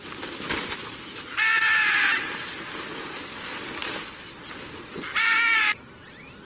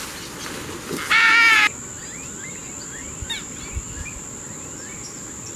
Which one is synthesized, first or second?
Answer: first